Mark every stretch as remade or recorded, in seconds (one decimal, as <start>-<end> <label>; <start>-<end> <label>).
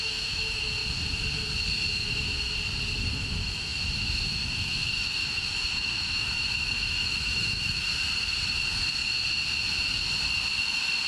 0.0-0.8 remade; 0.8-3.0 recorded; 3.0-7.9 remade; 7.9-11.1 recorded